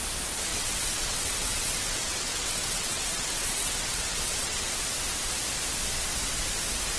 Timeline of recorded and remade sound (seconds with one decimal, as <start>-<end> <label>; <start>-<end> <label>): 0.0-0.5 recorded; 0.5-4.7 remade; 4.7-7.0 recorded